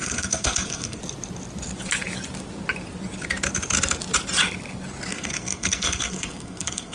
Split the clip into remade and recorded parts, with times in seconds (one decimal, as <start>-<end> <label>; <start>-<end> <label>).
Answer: 0.0-1.0 remade; 1.0-5.1 recorded; 5.1-6.9 remade